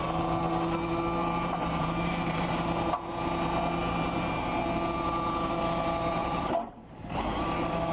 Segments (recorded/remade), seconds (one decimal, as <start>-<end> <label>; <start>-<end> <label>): 0.0-1.2 recorded; 1.2-2.5 remade; 2.5-3.8 recorded; 3.8-4.5 remade; 4.5-6.2 recorded; 6.2-7.2 remade; 7.2-7.9 recorded